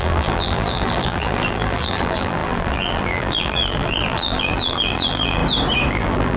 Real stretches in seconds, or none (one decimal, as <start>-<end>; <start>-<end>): 5.4-5.9

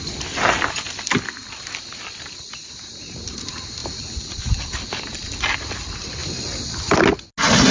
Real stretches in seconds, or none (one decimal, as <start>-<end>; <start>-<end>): 0.0-3.8; 4.8-7.7